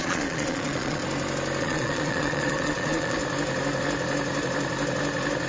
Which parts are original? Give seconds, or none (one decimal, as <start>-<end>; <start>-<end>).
1.0-1.6; 3.2-5.5